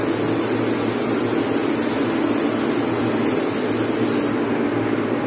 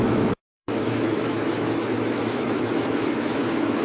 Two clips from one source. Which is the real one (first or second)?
first